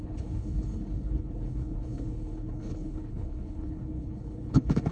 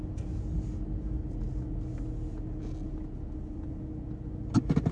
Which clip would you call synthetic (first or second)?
first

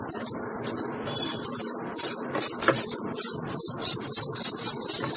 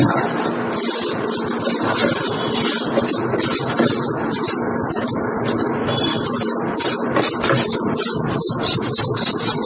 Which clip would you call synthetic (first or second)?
first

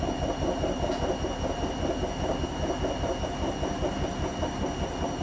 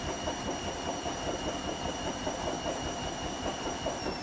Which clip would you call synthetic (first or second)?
second